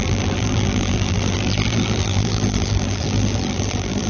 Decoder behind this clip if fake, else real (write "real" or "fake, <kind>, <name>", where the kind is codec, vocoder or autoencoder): fake, vocoder, BigVGAN v2